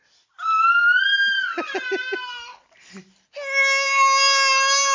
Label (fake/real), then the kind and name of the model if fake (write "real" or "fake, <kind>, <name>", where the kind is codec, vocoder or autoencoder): real